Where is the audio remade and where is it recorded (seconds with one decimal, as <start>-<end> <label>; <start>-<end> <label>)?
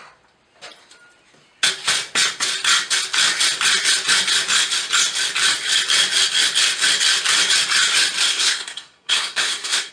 0.0-8.3 recorded; 8.3-9.9 remade